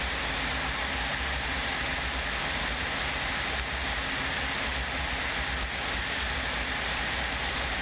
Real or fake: real